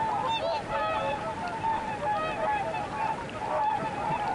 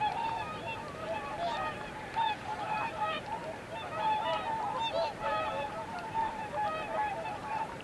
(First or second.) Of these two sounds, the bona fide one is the first